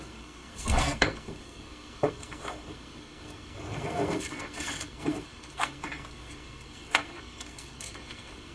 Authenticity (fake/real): fake